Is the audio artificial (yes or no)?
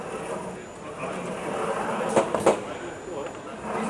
no